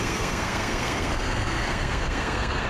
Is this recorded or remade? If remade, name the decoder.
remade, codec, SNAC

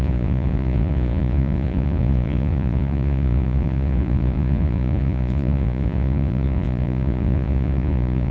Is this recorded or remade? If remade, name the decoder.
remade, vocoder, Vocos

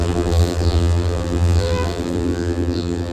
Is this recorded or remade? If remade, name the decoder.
remade, vocoder, BigVGAN v2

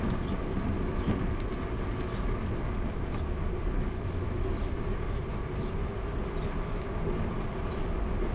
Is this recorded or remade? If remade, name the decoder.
recorded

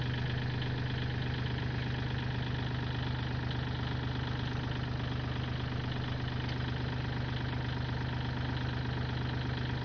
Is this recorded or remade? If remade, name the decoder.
recorded